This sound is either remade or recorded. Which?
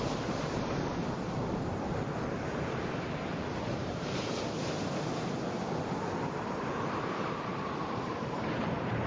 remade